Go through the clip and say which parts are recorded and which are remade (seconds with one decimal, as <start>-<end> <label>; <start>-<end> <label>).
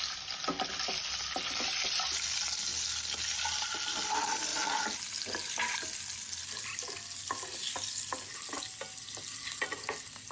0.0-10.3 recorded